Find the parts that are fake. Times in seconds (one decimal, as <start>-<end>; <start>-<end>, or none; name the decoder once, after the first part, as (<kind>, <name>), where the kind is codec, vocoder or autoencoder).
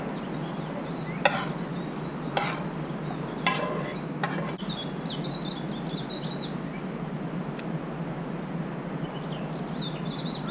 3.9-4.4 (vocoder, BigVGAN v2)